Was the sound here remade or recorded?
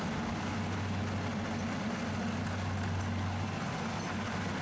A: recorded